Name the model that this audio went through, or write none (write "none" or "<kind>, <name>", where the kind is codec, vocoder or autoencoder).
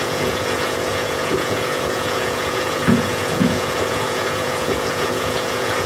vocoder, Vocos